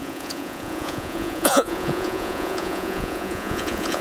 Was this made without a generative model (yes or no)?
no